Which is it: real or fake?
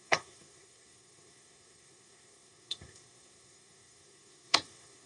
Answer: fake